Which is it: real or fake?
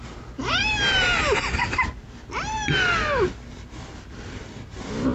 real